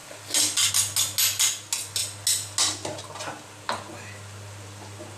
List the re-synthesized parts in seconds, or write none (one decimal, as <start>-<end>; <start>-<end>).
none